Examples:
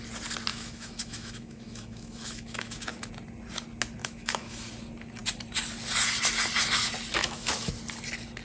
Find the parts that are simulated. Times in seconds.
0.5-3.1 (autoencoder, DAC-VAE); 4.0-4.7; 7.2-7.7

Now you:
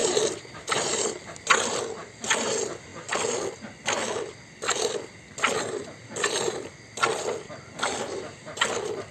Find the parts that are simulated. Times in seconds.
0.0-1.5 (vocoder, BigVGAN v2)

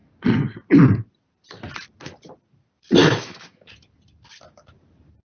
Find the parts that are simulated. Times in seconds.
3.0-3.7 (autoencoder, DAC-VAE)

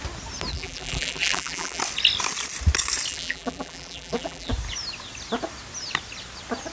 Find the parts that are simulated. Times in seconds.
0.5-1.8 (vocoder, BigVGAN v2); 3.1-4.5